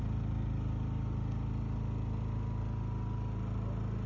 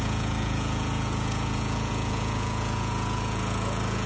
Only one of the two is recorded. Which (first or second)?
first